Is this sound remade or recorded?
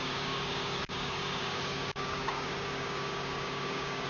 remade